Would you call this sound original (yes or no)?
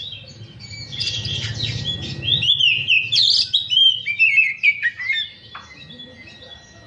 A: yes